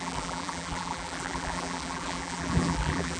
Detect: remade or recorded remade